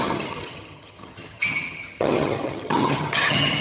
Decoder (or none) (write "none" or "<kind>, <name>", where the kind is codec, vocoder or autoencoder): vocoder, HiFi-GAN